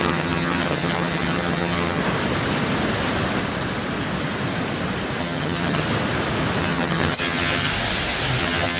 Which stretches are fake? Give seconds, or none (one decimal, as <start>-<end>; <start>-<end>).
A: 0.0-2.0; 5.2-5.8; 6.6-7.7; 8.4-8.8